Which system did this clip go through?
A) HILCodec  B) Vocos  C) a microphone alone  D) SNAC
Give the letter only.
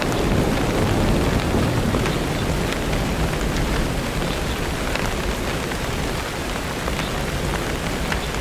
C